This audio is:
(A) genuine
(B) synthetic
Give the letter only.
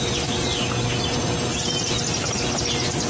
A